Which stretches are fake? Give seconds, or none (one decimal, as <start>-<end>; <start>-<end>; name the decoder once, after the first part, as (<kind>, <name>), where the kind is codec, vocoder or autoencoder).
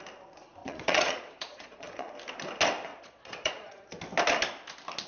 0.6-2.1 (vocoder, Vocos); 2.9-3.8